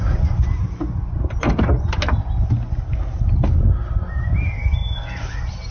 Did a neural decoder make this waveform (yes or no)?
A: no